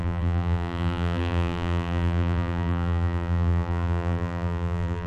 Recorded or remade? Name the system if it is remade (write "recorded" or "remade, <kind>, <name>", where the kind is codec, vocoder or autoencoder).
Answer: remade, vocoder, BigVGAN v2